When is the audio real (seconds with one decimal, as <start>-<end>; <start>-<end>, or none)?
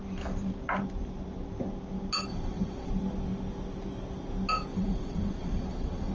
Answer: 0.0-2.3; 2.9-4.7